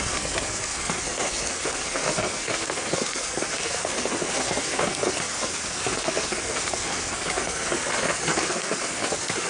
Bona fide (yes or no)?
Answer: no